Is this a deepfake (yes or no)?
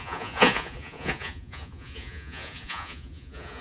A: yes